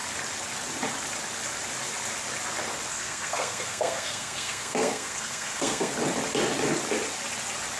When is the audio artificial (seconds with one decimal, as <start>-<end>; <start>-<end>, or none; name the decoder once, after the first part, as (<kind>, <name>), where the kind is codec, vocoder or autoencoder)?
2.9-5.9 (codec, SNAC)